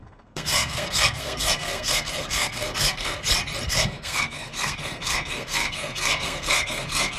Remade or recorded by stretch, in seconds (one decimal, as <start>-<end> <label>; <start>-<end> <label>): 0.0-3.2 remade; 3.2-3.7 recorded; 3.7-7.2 remade